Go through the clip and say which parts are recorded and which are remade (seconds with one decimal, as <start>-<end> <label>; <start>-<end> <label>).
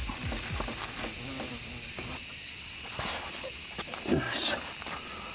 0.0-5.3 recorded